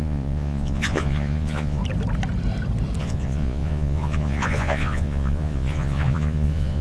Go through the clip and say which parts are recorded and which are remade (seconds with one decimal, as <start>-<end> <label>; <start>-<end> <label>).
0.0-1.8 remade; 1.8-3.0 recorded; 3.0-6.8 remade